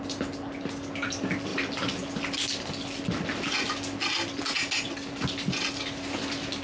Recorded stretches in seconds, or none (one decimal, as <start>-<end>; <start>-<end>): 0.0-6.6

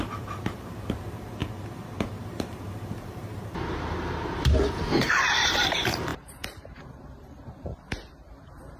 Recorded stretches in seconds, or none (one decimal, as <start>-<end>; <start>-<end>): none

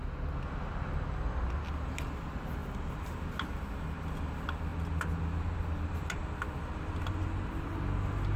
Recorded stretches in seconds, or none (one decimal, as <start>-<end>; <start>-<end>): 0.0-2.6; 3.1-8.4

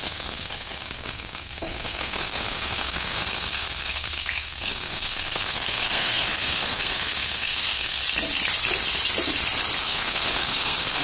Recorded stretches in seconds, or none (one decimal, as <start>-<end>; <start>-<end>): 8.0-9.8

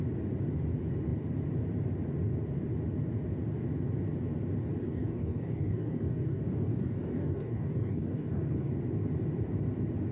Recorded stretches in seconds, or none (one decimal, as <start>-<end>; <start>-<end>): 0.0-4.8; 8.7-10.1

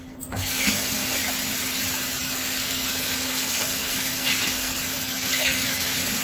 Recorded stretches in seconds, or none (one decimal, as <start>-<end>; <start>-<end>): 1.2-2.2

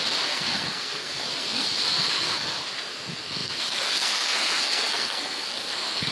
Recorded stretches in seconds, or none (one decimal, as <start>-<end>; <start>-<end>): none

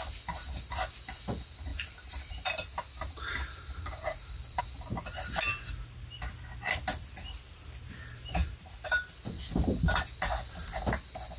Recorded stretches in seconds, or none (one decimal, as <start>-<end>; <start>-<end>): 0.0-1.7; 4.6-8.4; 9.0-11.4